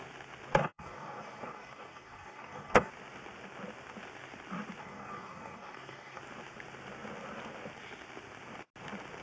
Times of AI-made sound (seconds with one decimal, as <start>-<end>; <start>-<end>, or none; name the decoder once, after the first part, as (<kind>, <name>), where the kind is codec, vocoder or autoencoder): 0.6-2.9 (codec, DAC); 4.8-6.2